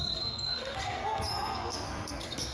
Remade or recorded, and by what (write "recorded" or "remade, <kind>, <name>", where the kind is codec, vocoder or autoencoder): remade, codec, SNAC